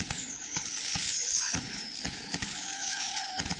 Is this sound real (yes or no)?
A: no